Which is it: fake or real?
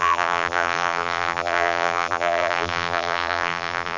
fake